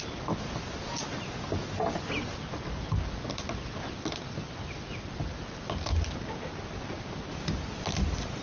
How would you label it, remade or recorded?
recorded